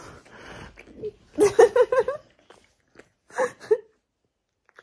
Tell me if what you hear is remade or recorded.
recorded